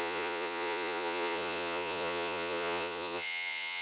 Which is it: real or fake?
fake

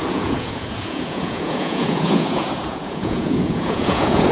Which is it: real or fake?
fake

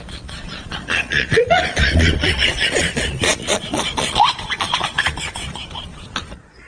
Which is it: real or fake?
fake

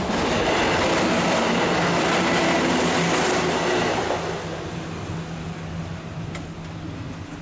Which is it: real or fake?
real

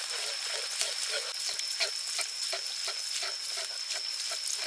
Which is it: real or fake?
real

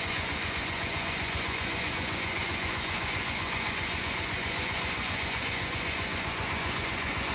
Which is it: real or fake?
fake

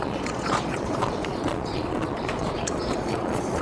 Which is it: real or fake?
fake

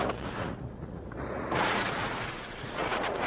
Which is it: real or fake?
fake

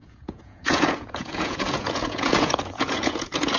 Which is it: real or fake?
fake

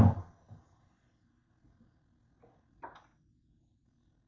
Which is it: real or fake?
real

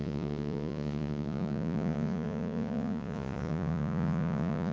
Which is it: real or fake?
fake